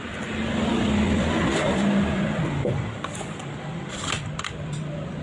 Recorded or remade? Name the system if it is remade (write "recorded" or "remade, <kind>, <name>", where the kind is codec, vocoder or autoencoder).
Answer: recorded